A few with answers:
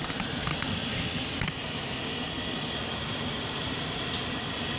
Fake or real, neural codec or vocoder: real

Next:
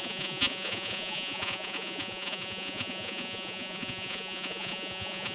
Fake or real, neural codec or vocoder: fake, vocoder, Vocos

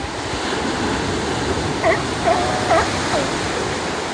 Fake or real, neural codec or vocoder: real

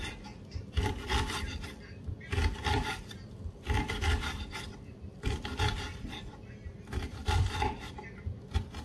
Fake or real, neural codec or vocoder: fake, vocoder, BigVGAN v2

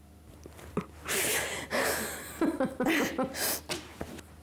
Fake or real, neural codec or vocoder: real